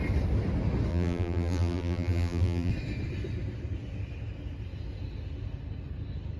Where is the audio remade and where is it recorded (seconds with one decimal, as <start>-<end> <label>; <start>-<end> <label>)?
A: 0.0-0.9 recorded; 0.9-2.7 remade; 2.7-6.4 recorded